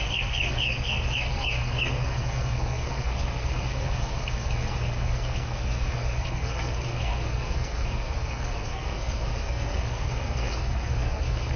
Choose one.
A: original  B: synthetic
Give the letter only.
B